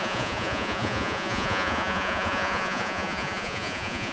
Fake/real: fake